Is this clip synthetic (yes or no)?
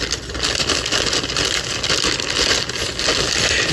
no